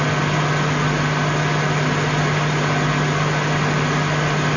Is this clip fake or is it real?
real